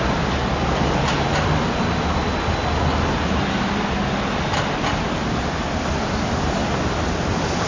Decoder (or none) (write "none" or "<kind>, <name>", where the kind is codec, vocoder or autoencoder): none